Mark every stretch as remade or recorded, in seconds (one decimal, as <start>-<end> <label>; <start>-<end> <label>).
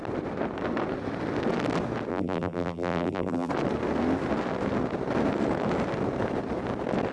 0.0-2.1 recorded; 2.1-3.5 remade; 3.5-7.1 recorded